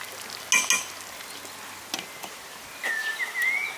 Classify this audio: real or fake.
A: real